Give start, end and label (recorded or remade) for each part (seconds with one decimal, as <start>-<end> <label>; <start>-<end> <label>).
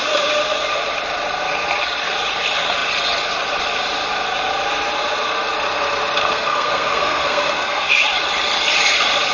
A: 0.0-6.2 recorded; 6.2-7.9 remade; 7.9-9.3 recorded